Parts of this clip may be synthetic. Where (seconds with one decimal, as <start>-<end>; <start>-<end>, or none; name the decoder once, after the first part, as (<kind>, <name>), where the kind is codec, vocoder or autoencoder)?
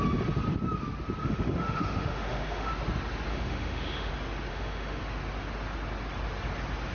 1.2-2.7 (autoencoder, DAC-VAE); 3.3-4.1; 4.5-5.0